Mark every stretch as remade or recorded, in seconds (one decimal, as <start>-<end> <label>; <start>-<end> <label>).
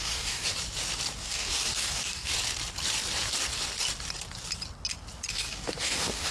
0.0-0.5 remade; 0.5-1.2 recorded; 1.2-2.3 remade; 2.3-5.3 recorded; 5.3-6.3 remade